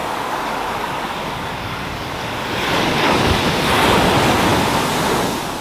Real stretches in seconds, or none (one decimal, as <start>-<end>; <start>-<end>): 3.4-5.6